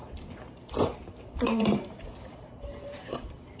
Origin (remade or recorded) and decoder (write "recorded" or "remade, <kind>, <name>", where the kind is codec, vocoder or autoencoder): remade, vocoder, BigVGAN v2